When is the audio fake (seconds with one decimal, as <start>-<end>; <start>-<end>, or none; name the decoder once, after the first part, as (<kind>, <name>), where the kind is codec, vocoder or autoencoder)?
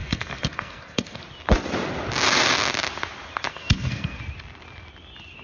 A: 0.0-1.2 (codec, SNAC); 3.5-4.2